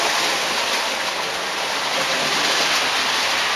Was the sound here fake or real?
real